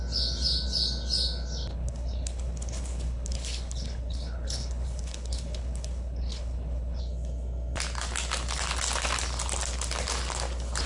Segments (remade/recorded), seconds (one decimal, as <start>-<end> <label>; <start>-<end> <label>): 0.0-1.7 recorded; 1.7-7.0 remade; 7.0-10.9 recorded